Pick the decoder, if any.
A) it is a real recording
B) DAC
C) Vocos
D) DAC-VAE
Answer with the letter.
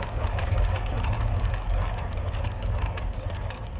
B